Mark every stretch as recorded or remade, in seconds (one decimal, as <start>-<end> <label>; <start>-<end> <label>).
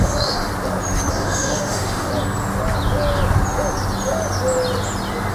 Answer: 0.0-0.5 remade; 0.5-1.1 recorded; 1.1-2.1 remade; 2.1-5.3 recorded